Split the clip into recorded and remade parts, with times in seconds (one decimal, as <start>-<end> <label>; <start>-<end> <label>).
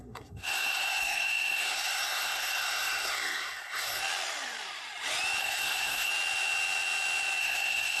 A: 0.0-4.0 remade; 4.0-5.4 recorded; 5.4-6.1 remade; 6.1-7.4 recorded; 7.4-8.0 remade